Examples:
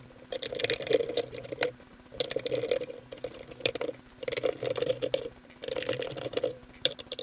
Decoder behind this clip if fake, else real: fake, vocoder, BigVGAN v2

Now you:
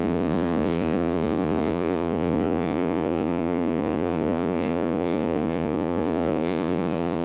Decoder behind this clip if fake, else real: fake, vocoder, Vocos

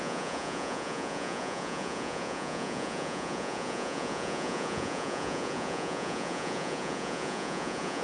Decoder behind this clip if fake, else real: fake, vocoder, Vocos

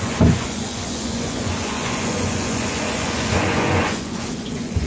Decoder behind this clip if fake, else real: fake, vocoder, Vocos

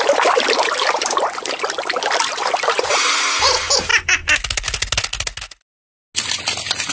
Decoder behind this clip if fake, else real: real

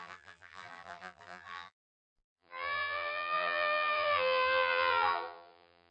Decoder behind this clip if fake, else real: fake, vocoder, BigVGAN v2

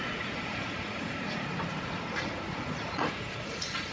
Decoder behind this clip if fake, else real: fake, vocoder, Vocos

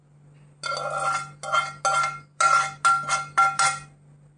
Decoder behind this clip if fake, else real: real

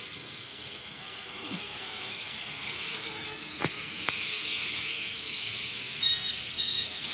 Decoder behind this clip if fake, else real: fake, codec, SNAC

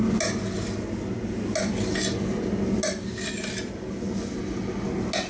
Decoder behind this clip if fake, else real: real